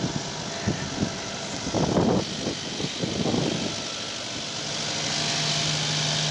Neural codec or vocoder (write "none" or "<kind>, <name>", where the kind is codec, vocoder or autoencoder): none